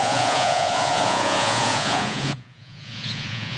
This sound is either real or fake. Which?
fake